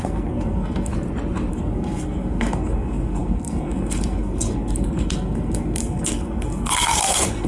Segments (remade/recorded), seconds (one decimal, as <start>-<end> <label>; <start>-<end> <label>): 0.0-0.9 remade; 0.9-1.5 recorded; 1.5-7.5 remade